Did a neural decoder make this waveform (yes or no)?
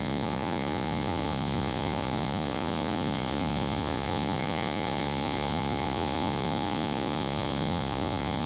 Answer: yes